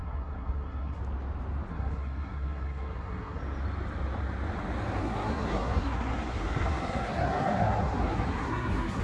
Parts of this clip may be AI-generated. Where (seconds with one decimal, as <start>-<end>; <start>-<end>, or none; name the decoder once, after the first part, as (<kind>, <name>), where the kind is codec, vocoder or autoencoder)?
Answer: 0.0-1.0 (codec, SNAC); 1.7-3.4; 5.0-9.0